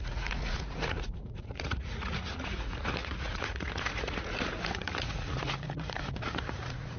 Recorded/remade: remade